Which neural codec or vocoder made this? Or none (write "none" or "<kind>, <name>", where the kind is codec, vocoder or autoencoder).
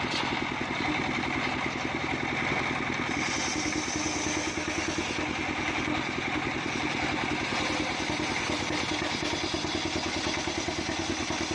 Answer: none